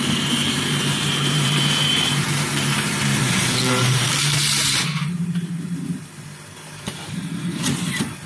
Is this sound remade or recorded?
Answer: remade